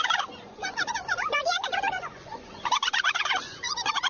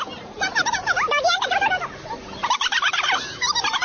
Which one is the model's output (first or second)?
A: first